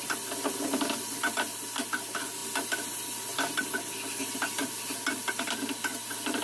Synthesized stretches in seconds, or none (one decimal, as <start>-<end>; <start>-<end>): none